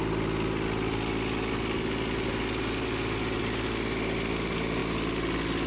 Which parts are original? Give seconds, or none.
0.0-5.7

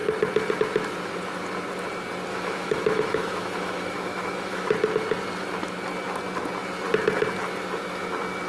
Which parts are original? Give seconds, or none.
0.0-2.3; 4.7-8.5

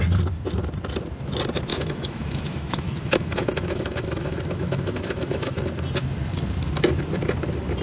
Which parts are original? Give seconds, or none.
0.0-1.7; 5.6-7.8